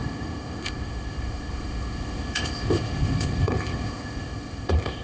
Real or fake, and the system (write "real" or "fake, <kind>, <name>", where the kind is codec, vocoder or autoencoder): fake, codec, ZipCodec